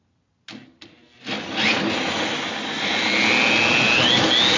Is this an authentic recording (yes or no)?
yes